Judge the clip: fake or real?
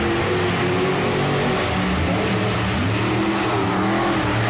real